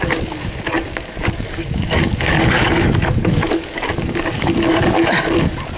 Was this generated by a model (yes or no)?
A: yes